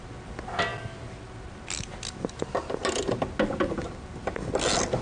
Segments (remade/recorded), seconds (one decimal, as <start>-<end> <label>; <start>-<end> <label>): 0.0-5.0 recorded